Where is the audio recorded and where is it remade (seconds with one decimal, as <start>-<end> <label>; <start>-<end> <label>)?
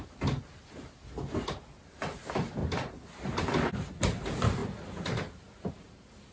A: 0.0-6.3 recorded